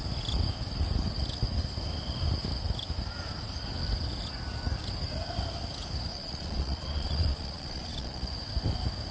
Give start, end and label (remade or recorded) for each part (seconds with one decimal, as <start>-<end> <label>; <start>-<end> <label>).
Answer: 0.0-6.1 recorded; 6.1-8.3 remade; 8.3-9.1 recorded